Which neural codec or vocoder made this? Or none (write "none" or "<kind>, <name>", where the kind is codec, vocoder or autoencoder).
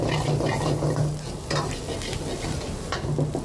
none